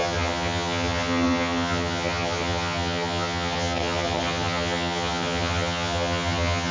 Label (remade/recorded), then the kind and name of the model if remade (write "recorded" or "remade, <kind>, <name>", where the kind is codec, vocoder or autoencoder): remade, vocoder, HiFi-GAN